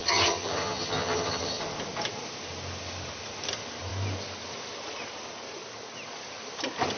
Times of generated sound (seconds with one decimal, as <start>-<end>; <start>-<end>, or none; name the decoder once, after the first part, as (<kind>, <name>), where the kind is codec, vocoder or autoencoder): 0.0-1.6 (vocoder, HiFi-GAN)